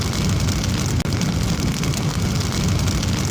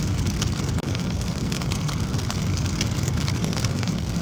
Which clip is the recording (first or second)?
first